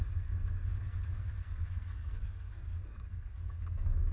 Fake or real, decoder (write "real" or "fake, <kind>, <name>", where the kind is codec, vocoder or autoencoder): fake, codec, SNAC